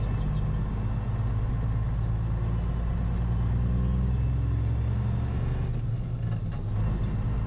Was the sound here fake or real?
real